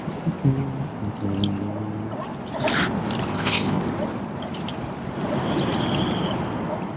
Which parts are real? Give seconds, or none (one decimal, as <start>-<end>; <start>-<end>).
0.0-3.3; 3.8-7.0